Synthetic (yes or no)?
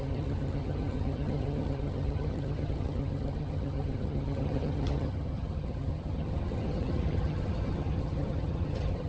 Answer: yes